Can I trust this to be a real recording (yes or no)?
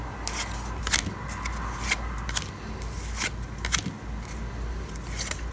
yes